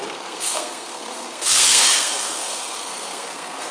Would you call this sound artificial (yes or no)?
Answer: yes